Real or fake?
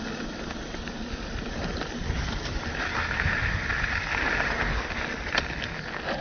real